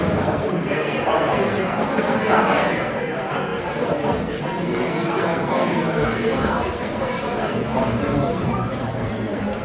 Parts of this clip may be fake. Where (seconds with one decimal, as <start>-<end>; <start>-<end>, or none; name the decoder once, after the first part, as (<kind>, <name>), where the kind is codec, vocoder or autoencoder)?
0.0-9.6 (codec, SNAC)